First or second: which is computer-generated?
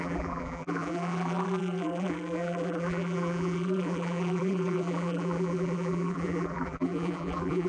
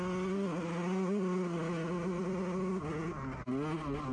first